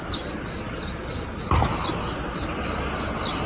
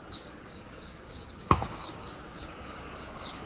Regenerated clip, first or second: second